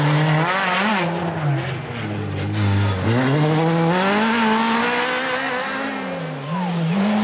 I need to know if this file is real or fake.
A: real